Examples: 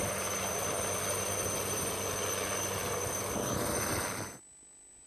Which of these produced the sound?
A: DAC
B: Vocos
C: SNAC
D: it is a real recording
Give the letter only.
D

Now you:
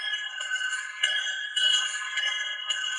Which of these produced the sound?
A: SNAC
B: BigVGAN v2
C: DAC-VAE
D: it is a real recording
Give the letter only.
A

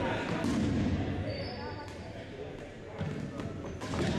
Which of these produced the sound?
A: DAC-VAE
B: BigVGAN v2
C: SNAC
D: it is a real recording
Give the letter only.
D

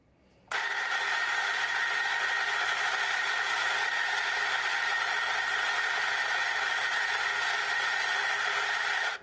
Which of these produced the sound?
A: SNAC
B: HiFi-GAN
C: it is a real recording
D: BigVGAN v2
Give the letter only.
C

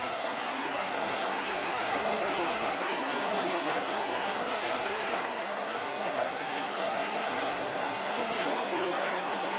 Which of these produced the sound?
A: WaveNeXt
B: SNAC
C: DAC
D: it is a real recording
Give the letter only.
B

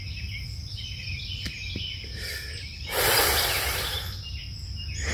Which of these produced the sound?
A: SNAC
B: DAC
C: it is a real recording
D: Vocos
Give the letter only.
C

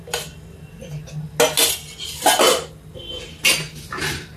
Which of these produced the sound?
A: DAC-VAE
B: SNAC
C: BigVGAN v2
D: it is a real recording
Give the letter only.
D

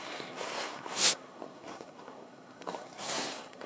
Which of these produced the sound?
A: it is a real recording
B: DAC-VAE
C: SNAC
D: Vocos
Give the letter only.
C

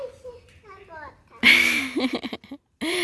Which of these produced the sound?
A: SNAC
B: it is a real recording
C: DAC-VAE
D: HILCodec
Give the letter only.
B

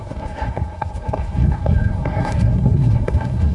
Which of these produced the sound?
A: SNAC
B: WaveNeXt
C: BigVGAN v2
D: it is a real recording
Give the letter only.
A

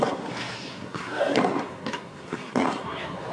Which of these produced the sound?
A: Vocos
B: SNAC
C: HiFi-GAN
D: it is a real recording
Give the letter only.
B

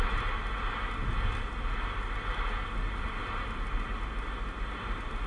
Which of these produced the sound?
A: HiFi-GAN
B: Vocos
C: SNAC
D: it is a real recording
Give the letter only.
D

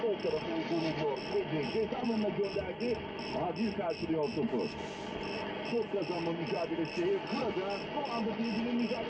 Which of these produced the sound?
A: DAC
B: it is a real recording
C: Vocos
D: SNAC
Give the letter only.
B